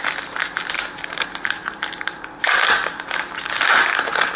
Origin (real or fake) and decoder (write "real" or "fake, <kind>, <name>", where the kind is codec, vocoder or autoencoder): real